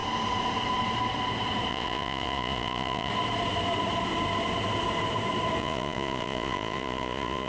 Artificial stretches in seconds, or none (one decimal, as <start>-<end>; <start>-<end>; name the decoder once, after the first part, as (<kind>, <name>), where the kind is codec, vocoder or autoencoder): 1.7-3.1 (vocoder, Vocos); 5.6-7.5